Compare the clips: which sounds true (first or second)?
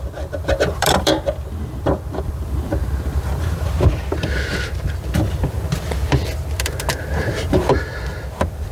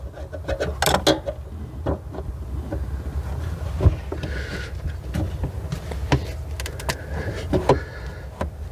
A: second